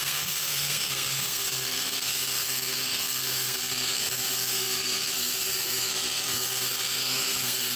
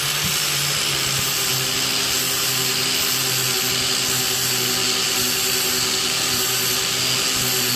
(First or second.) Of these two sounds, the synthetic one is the first